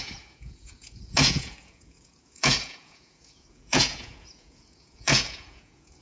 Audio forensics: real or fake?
fake